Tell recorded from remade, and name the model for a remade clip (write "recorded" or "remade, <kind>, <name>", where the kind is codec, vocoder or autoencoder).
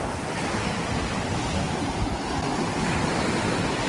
recorded